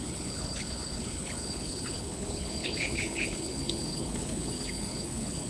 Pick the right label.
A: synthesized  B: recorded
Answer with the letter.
A